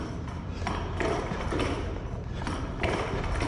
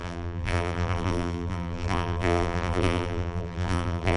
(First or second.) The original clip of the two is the first